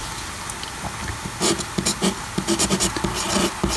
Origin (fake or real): real